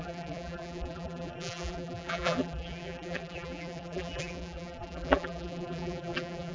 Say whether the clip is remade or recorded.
remade